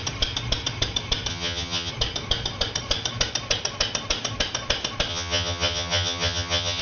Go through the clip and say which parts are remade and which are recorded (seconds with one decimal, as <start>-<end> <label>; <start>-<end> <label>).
0.0-1.3 recorded; 1.3-1.9 remade; 1.9-5.1 recorded; 5.1-6.8 remade